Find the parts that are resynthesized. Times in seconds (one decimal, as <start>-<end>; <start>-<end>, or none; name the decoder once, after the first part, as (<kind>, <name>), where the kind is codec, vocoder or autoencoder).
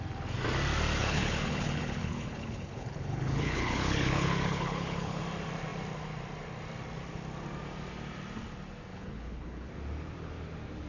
1.0-5.2 (codec, HILCodec); 8.9-9.7